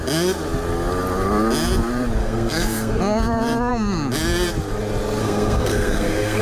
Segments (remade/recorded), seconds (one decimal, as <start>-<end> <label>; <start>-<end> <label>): 0.0-2.2 recorded; 2.2-3.0 remade; 3.0-5.2 recorded; 5.2-6.4 remade